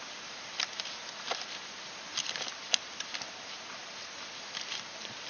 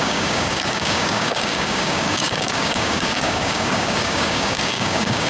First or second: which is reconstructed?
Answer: second